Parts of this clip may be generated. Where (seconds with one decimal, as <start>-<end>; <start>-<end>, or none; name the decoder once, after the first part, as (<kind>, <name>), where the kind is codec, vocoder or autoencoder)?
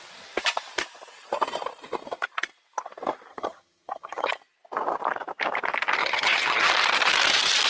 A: 3.3-4.3 (vocoder, HiFi-GAN); 6.0-6.7